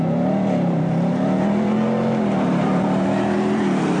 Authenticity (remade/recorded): remade